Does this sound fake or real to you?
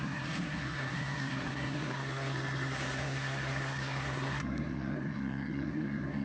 fake